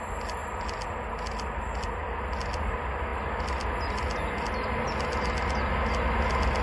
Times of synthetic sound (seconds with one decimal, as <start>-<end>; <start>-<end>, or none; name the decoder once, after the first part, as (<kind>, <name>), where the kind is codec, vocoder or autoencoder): none